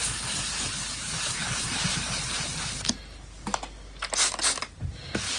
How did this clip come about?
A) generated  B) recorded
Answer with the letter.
B